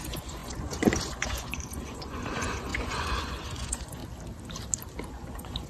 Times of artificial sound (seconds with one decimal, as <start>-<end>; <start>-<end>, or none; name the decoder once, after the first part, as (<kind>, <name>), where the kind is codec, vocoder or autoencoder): 0.0-4.0 (vocoder, Vocos); 5.1-5.7